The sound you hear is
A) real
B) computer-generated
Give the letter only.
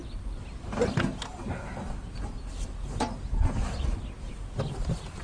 A